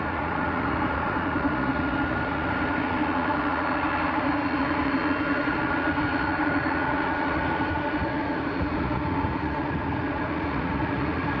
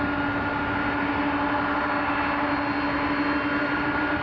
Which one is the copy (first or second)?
first